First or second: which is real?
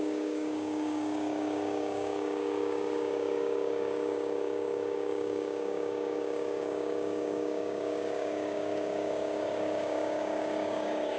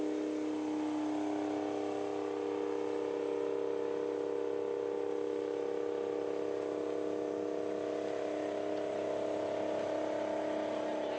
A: second